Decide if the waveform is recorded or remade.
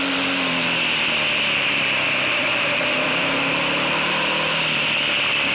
remade